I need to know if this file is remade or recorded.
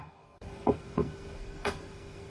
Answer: remade